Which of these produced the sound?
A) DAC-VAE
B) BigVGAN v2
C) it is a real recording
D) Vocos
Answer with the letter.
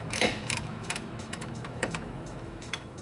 A